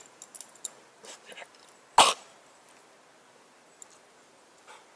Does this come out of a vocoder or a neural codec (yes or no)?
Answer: no